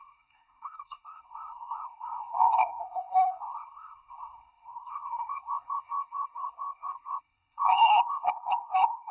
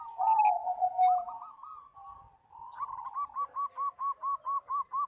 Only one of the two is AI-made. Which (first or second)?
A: first